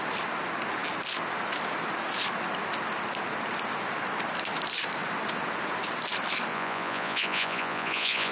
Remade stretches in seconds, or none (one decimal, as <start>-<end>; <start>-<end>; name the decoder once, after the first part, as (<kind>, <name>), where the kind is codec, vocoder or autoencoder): 6.5-8.3 (vocoder, Vocos)